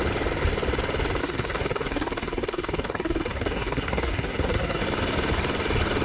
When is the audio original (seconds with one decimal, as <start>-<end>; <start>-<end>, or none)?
0.0-1.2; 4.8-6.0